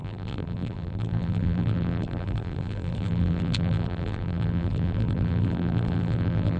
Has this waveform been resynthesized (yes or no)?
yes